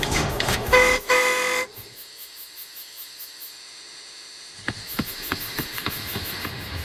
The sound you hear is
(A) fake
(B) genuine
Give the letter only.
A